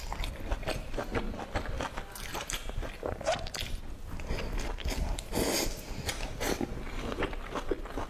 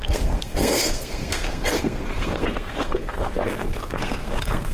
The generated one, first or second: second